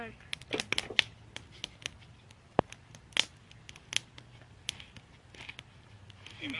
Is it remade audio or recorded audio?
recorded